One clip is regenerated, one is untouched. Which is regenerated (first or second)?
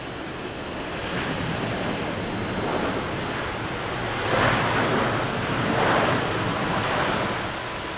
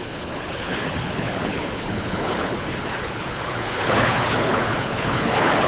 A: second